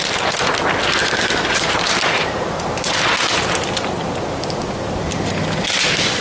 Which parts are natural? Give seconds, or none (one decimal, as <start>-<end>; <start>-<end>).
0.0-1.0; 3.1-6.2

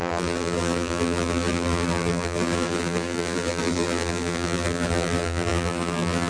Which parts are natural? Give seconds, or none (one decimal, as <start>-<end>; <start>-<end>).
none

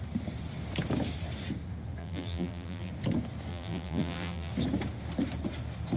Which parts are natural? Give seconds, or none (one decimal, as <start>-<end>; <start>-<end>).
0.0-2.0; 2.9-3.5; 4.5-6.0

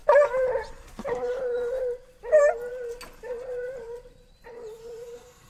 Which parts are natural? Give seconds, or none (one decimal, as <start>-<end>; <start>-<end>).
2.4-5.5

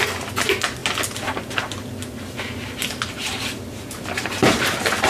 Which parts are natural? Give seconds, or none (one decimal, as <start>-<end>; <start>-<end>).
0.0-3.2

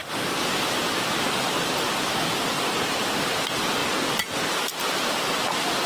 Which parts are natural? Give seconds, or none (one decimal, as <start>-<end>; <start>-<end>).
0.0-0.5; 3.8-4.5

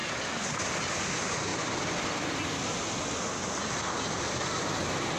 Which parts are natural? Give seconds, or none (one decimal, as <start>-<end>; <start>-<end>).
0.0-5.2

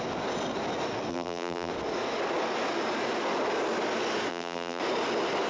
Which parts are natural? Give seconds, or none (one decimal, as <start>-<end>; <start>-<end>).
0.0-1.1; 1.7-4.3; 4.8-5.5